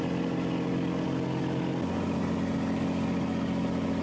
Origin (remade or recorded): recorded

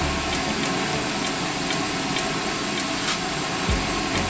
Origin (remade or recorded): recorded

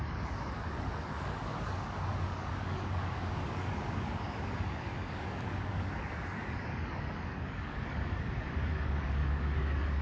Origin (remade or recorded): remade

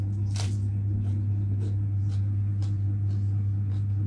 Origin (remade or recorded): recorded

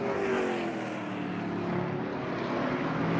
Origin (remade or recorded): recorded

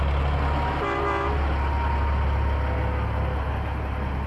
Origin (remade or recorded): recorded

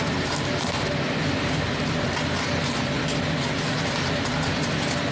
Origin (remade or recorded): recorded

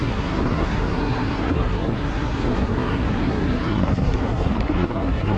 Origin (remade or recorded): remade